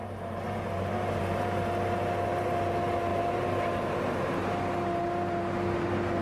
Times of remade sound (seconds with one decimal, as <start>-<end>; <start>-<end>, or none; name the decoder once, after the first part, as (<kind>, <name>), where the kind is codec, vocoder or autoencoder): 3.1-4.4 (vocoder, BigVGAN v2)